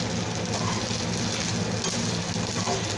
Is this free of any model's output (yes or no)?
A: yes